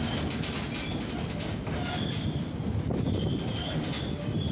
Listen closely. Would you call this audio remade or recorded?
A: recorded